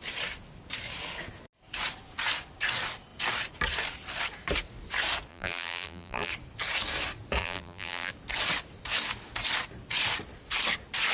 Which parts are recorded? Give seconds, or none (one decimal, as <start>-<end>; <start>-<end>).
0.0-5.3; 6.3-7.4; 8.1-11.1